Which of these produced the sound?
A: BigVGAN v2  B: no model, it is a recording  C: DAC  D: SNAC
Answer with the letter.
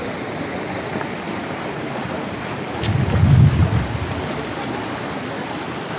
B